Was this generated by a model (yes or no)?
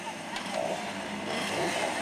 yes